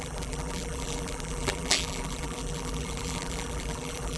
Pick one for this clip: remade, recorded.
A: remade